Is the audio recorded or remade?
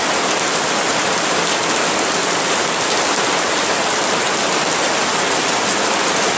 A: recorded